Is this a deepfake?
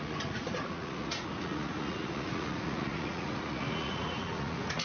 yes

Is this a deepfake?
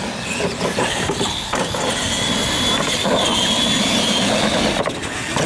no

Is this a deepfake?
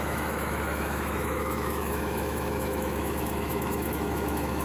yes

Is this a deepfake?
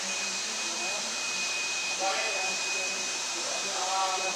yes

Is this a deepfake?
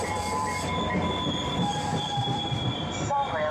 yes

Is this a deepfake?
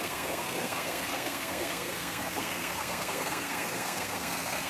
yes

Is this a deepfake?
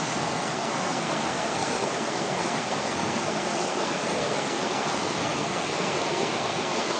yes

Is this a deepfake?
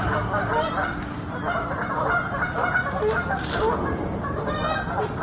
no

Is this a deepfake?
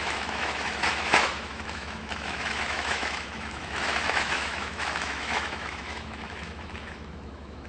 yes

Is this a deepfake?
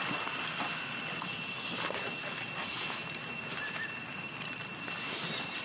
no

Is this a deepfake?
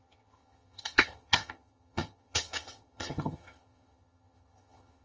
yes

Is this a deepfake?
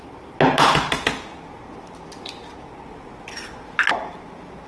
no